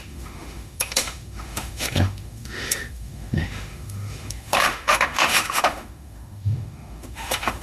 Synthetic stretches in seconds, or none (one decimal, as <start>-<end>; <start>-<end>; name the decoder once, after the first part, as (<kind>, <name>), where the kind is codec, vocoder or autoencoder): 0.0-7.6 (autoencoder, DAC-VAE)